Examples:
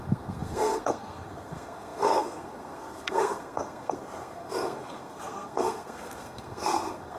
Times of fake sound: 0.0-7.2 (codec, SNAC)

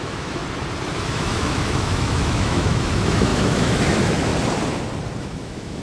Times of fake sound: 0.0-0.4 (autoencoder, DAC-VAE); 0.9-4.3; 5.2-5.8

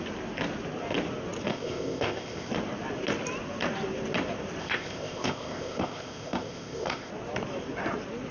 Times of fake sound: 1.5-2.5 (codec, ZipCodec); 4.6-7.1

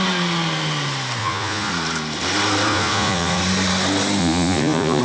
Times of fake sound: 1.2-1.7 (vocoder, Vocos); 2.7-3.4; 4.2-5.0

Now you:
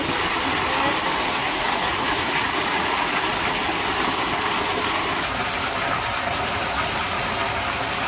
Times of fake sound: 1.4-3.2 (vocoder, Vocos); 6.3-7.3

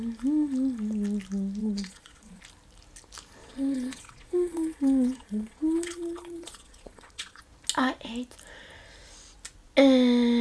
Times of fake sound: 1.6-2.4 (vocoder, Vocos); 3.4-7.4